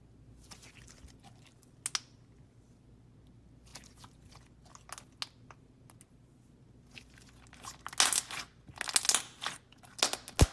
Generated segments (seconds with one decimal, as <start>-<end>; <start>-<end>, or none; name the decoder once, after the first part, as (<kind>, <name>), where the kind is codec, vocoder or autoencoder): none